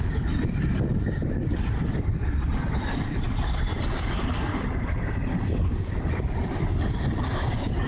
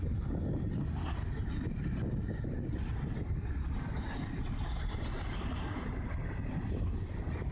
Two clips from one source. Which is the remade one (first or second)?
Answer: first